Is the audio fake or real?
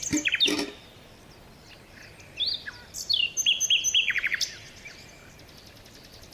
real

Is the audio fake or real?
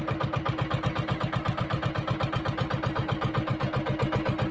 real